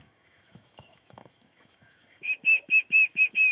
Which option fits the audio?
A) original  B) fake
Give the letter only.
B